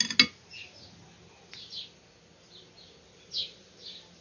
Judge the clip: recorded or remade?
recorded